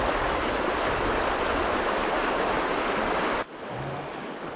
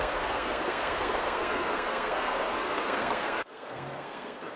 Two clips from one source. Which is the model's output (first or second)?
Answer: second